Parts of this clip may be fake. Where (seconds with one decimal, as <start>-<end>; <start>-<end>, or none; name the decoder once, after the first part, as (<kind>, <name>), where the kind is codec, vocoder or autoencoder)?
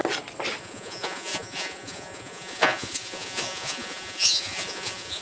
0.6-5.2 (vocoder, Vocos)